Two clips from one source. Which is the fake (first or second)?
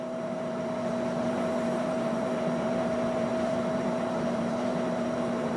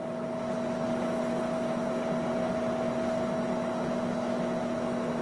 first